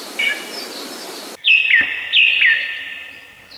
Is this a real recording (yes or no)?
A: yes